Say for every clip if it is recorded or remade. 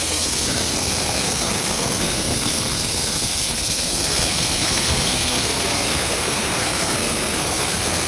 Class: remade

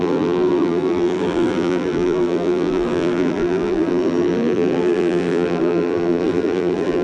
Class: remade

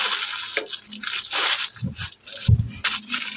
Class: recorded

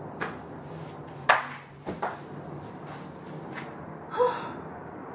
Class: recorded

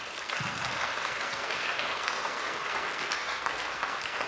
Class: remade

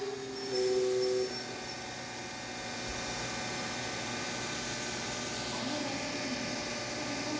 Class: recorded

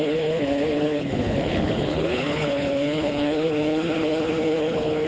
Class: remade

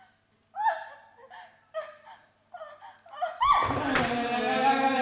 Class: recorded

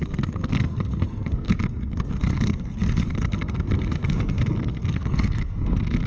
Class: remade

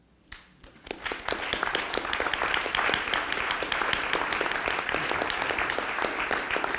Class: recorded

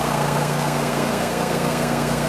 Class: remade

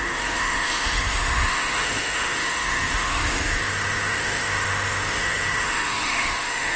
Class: remade